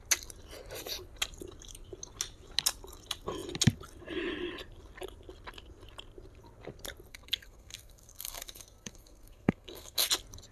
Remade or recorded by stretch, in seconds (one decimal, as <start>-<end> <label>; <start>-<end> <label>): 0.0-7.1 recorded; 7.1-10.1 remade; 10.1-10.5 recorded